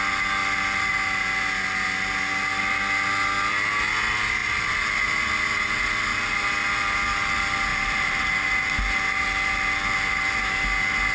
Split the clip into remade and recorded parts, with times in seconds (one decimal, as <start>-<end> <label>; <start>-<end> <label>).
0.0-7.7 recorded; 7.7-8.2 remade; 8.2-11.1 recorded